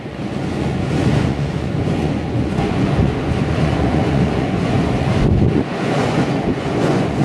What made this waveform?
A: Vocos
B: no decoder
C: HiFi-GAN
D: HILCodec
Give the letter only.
A